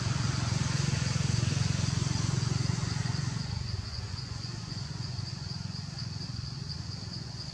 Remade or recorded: remade